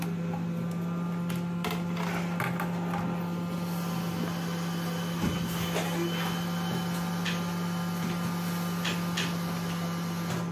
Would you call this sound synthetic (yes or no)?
no